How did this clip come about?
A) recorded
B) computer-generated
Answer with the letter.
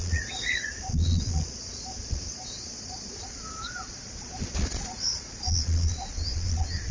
B